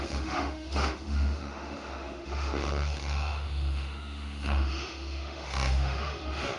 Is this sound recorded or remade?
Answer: remade